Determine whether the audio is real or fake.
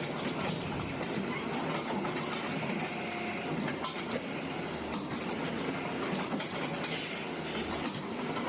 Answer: real